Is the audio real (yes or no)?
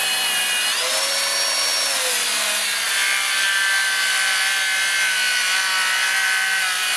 yes